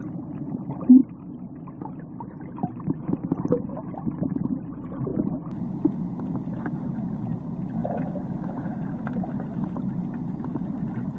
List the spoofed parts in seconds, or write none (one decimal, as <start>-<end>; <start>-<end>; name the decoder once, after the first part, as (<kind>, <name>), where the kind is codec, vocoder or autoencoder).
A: 0.0-5.1 (vocoder, BigVGAN v2); 6.5-7.8; 8.5-11.2